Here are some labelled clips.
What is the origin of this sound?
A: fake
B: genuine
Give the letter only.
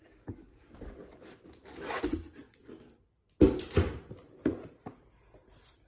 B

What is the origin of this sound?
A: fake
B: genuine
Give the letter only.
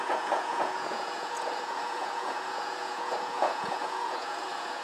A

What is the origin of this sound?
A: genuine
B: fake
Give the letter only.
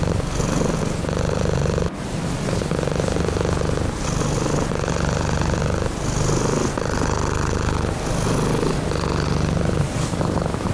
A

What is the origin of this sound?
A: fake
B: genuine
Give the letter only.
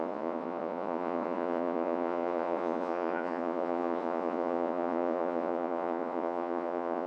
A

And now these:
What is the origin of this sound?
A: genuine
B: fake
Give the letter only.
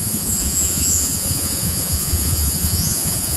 B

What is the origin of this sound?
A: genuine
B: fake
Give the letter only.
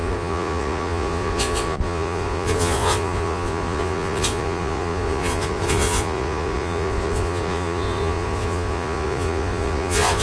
B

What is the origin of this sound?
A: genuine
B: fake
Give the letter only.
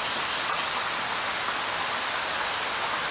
A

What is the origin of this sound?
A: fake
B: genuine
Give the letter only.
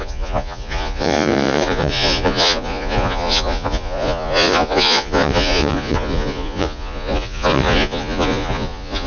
A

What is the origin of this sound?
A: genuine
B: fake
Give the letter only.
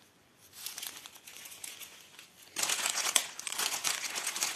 B